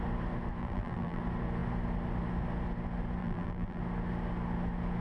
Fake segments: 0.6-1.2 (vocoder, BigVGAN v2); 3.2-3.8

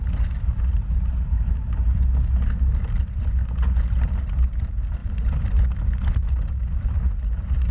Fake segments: none